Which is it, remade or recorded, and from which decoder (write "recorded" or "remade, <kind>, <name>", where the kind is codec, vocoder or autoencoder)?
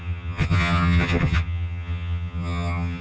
remade, vocoder, HiFi-GAN